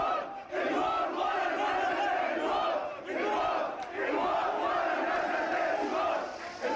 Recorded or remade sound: remade